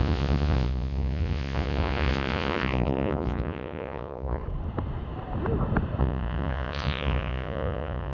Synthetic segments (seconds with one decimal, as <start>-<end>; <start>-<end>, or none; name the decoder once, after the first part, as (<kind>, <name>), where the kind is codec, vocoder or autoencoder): 0.0-4.4 (vocoder, Vocos); 6.0-8.1